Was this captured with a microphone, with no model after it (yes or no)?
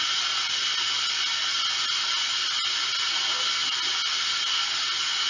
yes